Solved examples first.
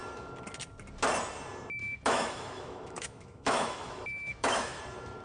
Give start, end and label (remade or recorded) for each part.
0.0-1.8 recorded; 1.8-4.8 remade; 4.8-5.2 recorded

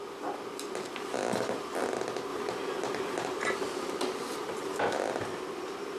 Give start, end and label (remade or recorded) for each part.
0.0-2.3 recorded; 2.3-4.8 remade; 4.8-6.0 recorded

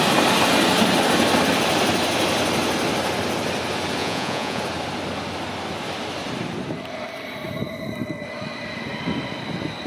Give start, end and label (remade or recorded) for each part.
0.0-4.0 recorded; 4.0-4.6 remade; 4.6-9.9 recorded

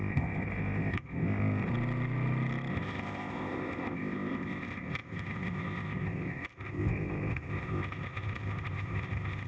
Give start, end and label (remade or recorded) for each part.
0.0-1.7 remade; 1.7-2.7 recorded; 2.7-9.5 remade

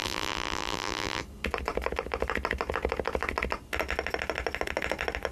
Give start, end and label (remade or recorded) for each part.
0.0-1.2 remade; 1.2-5.3 recorded